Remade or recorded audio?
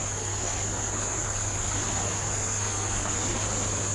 remade